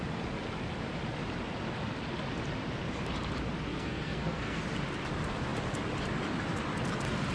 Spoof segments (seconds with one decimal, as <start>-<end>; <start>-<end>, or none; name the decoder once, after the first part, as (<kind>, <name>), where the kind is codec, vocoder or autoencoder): 3.7-4.6 (codec, SNAC)